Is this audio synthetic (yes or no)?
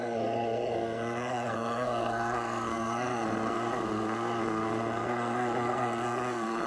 yes